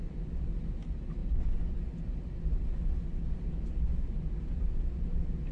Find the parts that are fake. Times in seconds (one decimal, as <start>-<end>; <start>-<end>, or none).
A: none